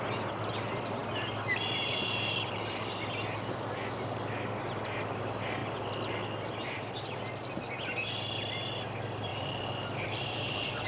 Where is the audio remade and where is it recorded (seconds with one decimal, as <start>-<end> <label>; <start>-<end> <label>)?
0.0-9.3 recorded; 9.3-10.9 remade